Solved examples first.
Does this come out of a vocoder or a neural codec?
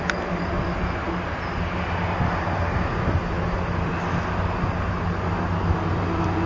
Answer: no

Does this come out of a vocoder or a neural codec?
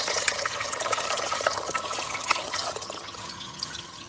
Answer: yes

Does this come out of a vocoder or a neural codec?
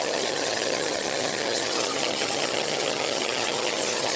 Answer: yes